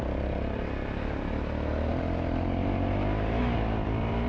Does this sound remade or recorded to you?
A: recorded